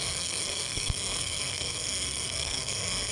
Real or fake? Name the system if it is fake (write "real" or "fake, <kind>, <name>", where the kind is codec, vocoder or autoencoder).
fake, codec, SNAC